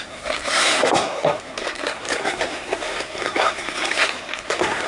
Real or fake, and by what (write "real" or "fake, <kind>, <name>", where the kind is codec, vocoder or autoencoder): fake, codec, SNAC